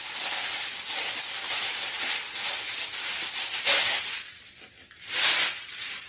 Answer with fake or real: real